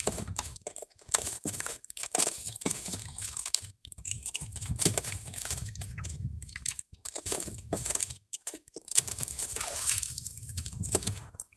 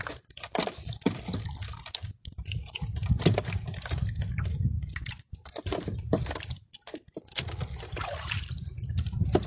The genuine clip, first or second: second